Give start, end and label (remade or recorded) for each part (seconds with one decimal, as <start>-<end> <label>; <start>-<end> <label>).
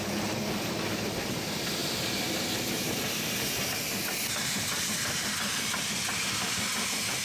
0.0-7.2 recorded